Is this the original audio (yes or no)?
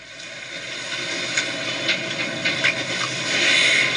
yes